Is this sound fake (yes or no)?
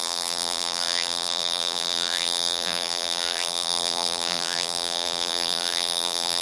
yes